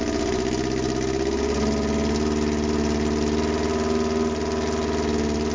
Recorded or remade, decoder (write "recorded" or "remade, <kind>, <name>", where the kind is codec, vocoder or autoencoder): recorded